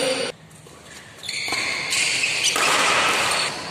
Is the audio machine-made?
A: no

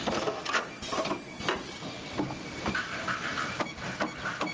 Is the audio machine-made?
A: no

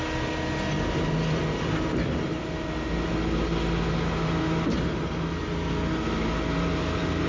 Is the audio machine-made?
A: no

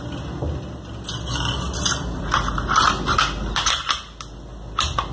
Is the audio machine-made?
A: no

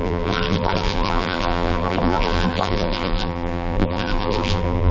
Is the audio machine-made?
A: yes